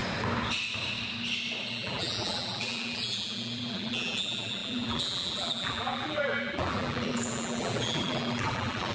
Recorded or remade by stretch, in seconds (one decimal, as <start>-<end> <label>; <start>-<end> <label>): 0.0-1.7 recorded; 1.7-8.9 remade